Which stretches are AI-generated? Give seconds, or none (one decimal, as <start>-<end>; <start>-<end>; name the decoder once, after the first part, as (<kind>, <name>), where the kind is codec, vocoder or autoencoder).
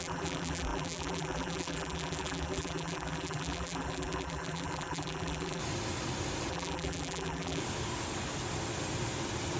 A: 0.0-5.6 (vocoder, BigVGAN v2); 6.5-7.6